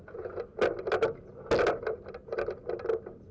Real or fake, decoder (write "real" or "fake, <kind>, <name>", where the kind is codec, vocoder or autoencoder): real